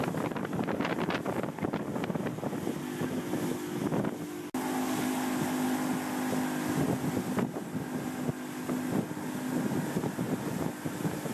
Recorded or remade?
recorded